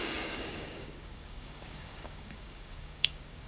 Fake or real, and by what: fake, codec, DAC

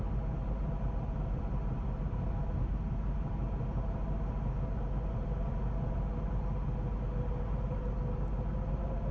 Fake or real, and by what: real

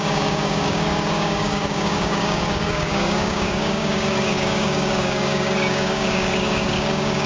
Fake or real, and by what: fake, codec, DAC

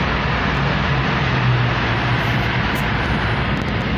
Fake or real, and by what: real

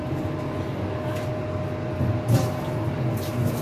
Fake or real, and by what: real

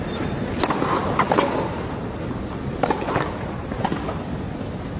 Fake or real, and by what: real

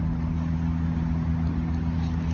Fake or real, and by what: real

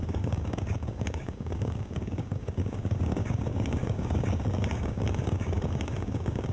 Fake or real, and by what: fake, codec, DAC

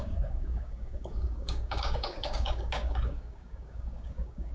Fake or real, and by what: fake, codec, DAC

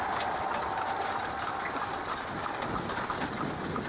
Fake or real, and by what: real